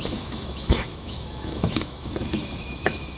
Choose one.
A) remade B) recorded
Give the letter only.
A